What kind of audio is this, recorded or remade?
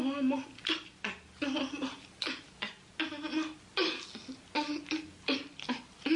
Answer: recorded